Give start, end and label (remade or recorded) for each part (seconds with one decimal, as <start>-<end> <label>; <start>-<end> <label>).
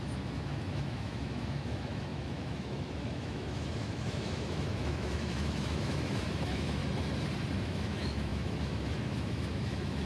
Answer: 0.0-6.8 remade; 6.8-7.6 recorded; 7.6-10.1 remade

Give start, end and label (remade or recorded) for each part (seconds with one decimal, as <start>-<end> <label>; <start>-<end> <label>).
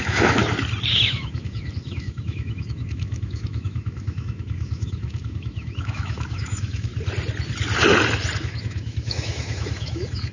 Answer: 0.0-0.4 remade; 0.4-0.9 recorded; 0.9-6.9 remade; 6.9-8.4 recorded; 8.4-10.3 remade